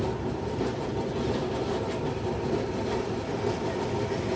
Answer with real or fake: real